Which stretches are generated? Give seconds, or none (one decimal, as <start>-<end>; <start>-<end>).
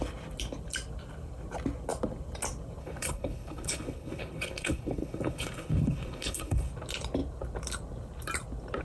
2.8-6.7